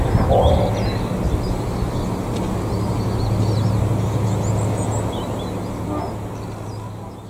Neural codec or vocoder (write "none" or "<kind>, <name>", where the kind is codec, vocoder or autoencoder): none